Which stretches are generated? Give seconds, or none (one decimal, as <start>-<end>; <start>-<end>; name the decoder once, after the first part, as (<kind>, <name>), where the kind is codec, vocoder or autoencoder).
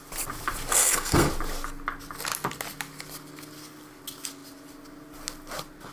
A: 0.8-1.3 (codec, SNAC)